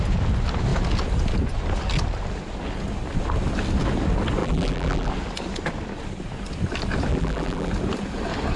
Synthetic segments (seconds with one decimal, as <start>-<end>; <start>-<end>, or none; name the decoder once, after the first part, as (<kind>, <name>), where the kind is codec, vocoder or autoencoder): 4.4-5.1 (vocoder, BigVGAN v2); 7.1-7.7